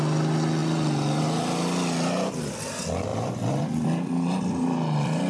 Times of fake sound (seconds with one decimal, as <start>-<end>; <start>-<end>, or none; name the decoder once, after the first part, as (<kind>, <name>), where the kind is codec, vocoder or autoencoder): 0.6-1.2 (vocoder, BigVGAN v2); 3.1-5.3